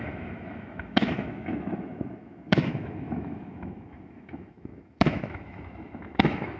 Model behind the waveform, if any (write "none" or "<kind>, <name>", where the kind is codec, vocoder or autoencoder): autoencoder, DAC-VAE